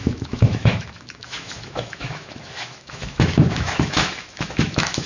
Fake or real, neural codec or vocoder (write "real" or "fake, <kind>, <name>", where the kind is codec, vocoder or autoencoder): fake, autoencoder, DAC-VAE